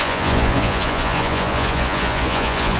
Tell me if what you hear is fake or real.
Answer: fake